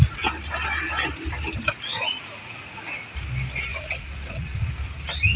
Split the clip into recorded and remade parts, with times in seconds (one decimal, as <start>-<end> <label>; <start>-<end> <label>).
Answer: 0.0-1.9 recorded; 1.9-2.8 remade; 2.8-3.7 recorded; 3.7-4.7 remade; 4.7-5.4 recorded